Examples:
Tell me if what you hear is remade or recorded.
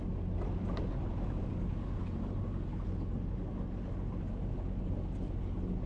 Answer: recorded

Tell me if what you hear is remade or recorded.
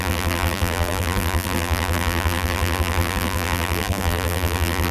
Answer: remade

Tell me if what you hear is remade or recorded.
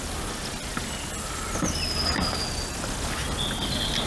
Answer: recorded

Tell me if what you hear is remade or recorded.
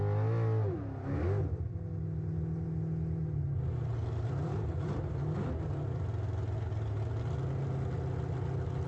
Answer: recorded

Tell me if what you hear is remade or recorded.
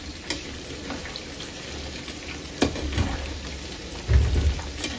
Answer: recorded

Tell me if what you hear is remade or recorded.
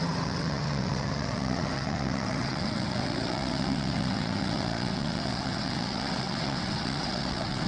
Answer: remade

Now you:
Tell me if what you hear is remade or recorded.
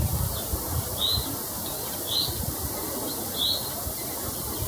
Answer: recorded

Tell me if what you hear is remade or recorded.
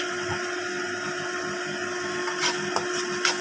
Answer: recorded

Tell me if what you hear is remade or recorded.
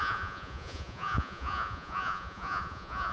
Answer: remade